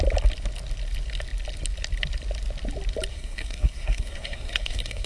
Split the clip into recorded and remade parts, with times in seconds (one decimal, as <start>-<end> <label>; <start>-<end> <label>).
0.0-3.1 recorded; 3.1-5.1 remade